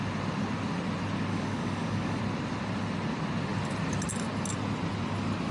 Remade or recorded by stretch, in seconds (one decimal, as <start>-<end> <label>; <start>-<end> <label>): 0.0-1.3 recorded; 1.3-2.2 remade; 2.2-5.5 recorded